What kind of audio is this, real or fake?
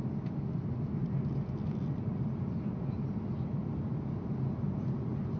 real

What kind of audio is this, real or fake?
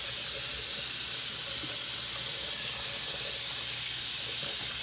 real